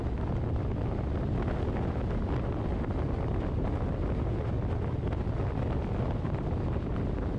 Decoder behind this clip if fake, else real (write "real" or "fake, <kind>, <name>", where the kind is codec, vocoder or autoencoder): real